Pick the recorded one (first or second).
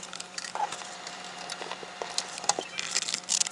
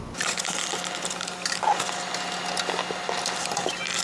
second